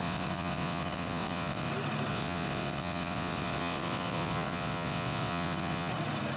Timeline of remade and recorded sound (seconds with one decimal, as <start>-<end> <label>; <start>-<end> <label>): 0.0-1.7 remade; 1.7-2.1 recorded; 2.1-5.9 remade; 5.9-6.4 recorded